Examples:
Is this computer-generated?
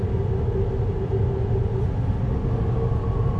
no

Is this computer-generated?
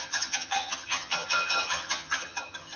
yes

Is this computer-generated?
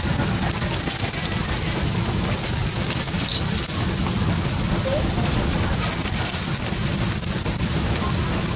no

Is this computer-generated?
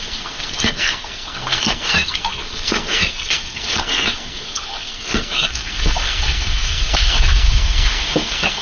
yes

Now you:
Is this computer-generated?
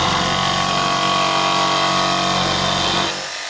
no